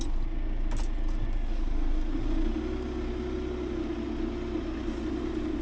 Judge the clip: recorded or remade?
recorded